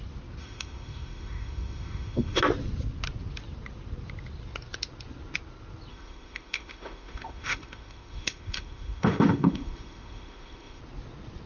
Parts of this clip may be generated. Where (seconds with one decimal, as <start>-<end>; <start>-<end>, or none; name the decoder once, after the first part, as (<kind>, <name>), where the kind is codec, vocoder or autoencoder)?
0.4-2.4 (autoencoder, DAC-VAE); 5.9-10.8